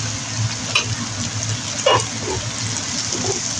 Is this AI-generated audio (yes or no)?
no